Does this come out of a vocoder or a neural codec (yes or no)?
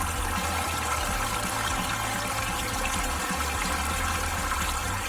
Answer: no